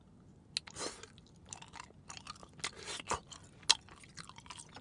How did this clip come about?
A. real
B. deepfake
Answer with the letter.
A